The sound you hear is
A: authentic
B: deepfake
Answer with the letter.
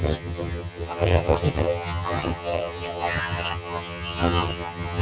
B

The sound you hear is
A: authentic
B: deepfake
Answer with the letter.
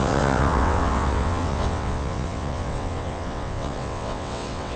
B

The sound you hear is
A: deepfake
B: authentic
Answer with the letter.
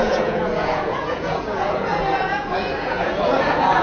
A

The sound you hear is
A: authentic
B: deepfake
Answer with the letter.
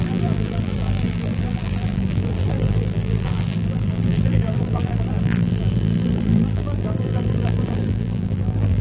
B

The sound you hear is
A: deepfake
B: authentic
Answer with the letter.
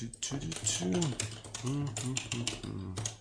B